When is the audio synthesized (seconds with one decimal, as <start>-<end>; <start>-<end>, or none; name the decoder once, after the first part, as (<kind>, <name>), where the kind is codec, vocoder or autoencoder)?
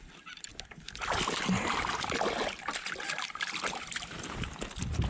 none